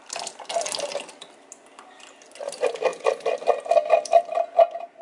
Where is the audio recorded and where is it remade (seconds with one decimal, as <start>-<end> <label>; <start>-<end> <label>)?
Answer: 0.0-5.0 recorded